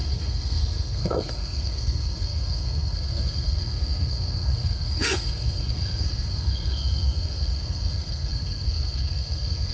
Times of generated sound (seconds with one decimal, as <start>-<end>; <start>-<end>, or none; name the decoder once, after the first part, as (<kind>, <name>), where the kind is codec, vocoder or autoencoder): 0.0-9.7 (codec, SNAC)